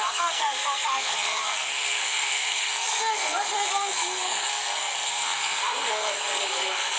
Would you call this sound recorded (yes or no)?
no